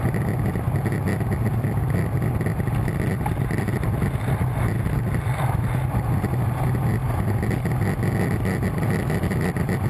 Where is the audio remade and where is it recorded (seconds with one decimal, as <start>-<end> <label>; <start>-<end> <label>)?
0.0-9.9 recorded